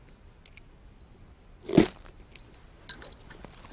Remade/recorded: recorded